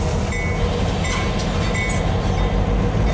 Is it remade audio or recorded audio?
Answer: recorded